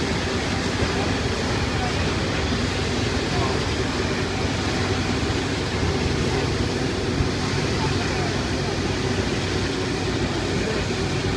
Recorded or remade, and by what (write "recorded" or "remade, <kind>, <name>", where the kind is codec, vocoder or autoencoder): recorded